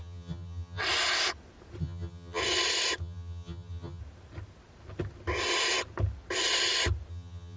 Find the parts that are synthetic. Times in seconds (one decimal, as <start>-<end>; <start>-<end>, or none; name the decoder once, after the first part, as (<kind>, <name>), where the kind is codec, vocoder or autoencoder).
0.0-0.8 (vocoder, HiFi-GAN); 1.8-2.4; 3.0-4.0; 7.1-7.6